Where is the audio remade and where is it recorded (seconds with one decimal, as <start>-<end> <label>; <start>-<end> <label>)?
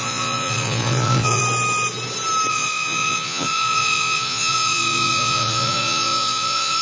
0.0-1.4 remade; 1.4-2.5 recorded; 2.5-6.8 remade